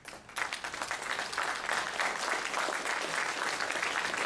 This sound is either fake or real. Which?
real